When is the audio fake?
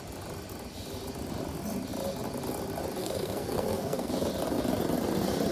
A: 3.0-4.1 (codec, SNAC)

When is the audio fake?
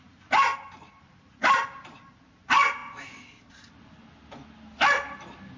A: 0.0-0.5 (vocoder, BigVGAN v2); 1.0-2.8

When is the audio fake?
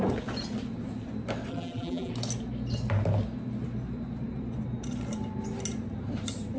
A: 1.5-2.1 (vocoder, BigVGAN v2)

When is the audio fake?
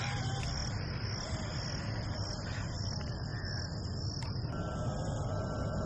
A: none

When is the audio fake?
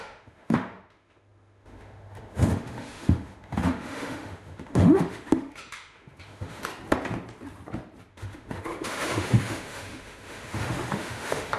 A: 0.0-6.7 (autoencoder, DAC-VAE); 8.1-11.6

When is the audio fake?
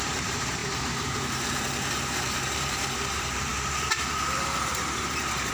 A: 0.0-5.5 (vocoder, BigVGAN v2)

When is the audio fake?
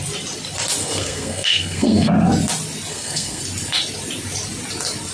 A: 0.8-2.1 (codec, SNAC); 2.9-3.4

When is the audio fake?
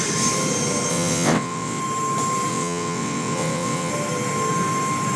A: 0.9-1.8 (vocoder, WaveNeXt); 2.5-3.9